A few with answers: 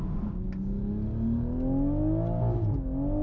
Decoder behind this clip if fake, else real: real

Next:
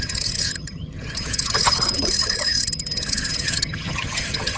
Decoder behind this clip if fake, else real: fake, vocoder, HiFi-GAN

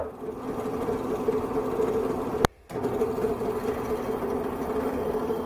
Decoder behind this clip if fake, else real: real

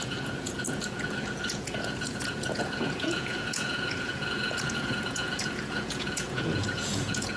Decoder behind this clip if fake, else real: fake, vocoder, Vocos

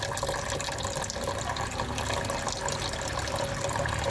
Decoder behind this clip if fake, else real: real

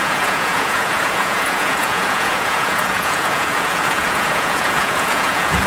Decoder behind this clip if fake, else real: fake, vocoder, Vocos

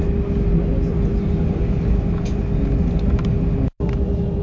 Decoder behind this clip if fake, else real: real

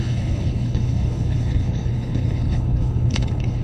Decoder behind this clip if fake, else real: fake, codec, HILCodec